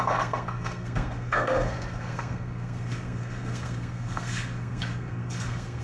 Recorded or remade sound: remade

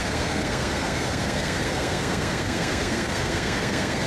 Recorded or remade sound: remade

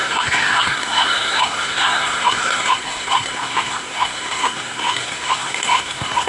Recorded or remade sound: remade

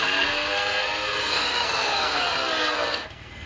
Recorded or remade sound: remade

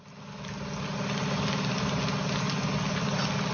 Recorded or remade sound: recorded